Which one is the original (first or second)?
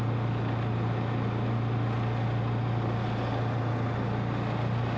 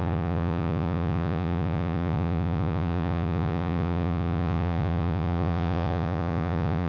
first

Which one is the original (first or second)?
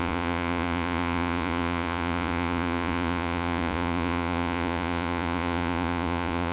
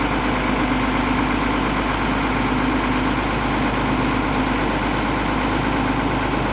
second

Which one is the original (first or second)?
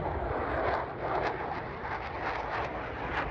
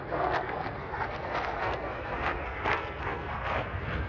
first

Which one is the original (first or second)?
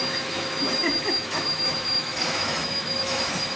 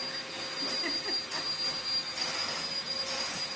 second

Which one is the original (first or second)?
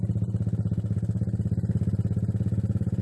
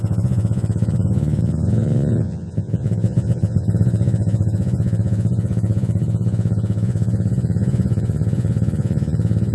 first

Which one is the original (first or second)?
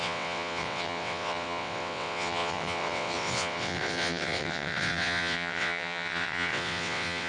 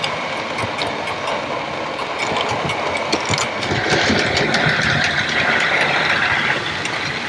second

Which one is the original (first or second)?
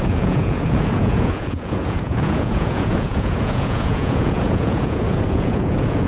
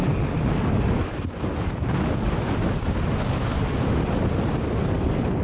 second